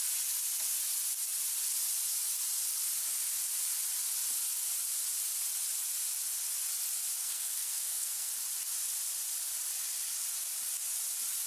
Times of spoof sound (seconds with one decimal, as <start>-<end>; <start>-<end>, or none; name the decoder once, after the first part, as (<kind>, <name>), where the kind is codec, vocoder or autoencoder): 7.2-8.3 (codec, SNAC)